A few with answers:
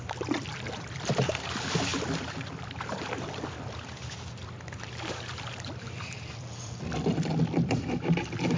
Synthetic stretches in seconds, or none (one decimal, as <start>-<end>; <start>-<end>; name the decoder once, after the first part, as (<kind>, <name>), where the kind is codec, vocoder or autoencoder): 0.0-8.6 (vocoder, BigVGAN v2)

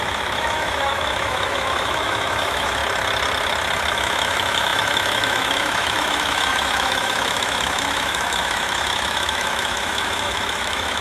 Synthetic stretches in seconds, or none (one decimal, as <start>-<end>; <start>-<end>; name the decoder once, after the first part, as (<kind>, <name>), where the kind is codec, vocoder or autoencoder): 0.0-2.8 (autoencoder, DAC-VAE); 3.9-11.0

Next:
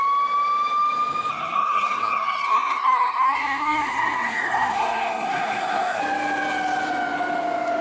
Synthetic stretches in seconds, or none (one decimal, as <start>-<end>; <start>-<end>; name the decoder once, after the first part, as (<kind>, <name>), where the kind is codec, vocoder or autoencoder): 1.3-6.0 (codec, SNAC)

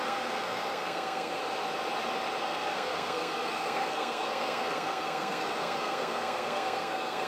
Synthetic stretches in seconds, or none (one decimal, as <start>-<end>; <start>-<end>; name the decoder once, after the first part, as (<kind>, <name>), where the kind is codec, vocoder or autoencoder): 0.0-1.4 (codec, SNAC); 2.4-7.3